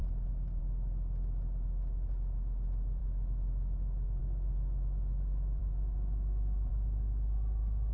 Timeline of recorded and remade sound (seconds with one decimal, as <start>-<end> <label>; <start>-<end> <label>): 0.0-5.6 recorded; 5.6-6.7 remade; 6.7-7.9 recorded